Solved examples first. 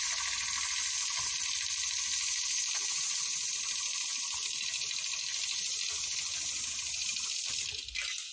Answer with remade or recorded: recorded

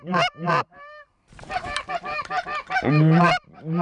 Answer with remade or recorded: remade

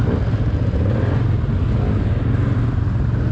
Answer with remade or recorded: recorded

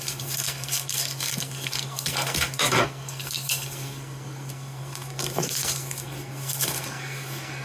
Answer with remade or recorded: remade